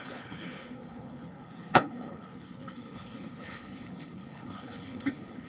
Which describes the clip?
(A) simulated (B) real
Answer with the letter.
A